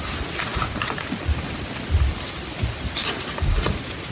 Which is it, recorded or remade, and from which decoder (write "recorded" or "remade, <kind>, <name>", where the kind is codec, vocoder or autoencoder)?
recorded